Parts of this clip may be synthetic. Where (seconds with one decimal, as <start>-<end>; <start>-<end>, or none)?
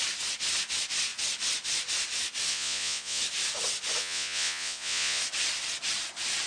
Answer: 2.5-3.2; 4.0-5.2